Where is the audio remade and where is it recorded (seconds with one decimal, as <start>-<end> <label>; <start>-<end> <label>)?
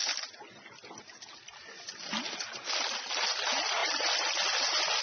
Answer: 0.0-5.0 recorded